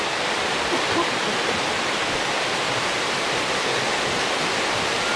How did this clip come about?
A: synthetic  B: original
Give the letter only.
B